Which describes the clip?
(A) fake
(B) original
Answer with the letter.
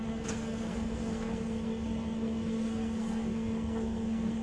A